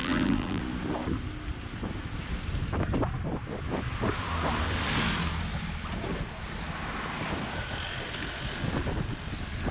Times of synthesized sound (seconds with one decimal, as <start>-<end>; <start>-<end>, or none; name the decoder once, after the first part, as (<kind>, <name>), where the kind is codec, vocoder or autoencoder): 0.0-0.6 (vocoder, BigVGAN v2)